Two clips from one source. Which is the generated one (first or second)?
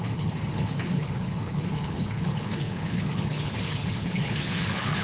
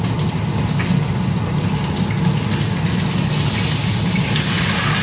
first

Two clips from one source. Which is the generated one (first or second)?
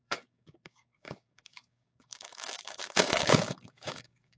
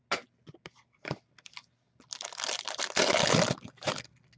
first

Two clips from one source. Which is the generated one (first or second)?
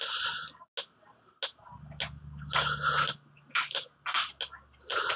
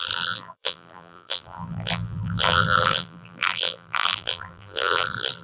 second